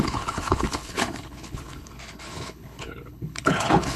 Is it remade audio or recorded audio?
remade